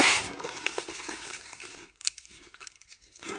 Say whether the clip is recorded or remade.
remade